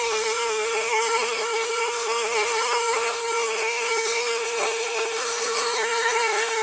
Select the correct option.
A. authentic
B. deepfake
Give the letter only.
B